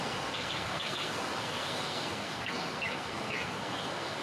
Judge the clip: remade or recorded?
remade